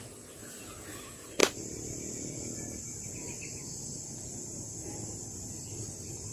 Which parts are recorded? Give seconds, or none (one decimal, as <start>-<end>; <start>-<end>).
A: 0.0-6.3